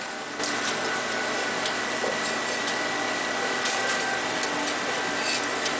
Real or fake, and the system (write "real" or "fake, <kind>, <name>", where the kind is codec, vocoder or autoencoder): real